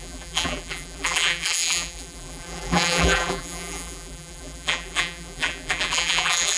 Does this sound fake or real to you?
fake